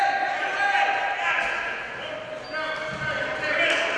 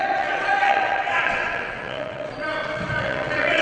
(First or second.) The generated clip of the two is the second